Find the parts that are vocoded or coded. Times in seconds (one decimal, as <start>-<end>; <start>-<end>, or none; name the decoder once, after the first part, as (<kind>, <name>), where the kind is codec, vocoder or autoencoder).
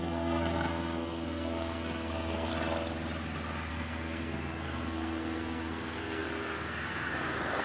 0.0-2.5 (codec, SNAC); 3.7-7.6